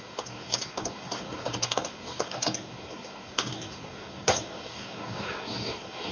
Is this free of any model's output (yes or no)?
no